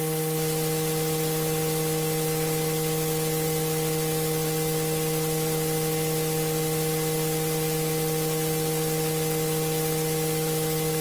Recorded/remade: recorded